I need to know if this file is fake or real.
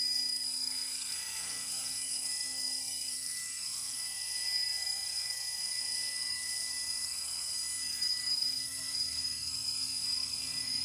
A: fake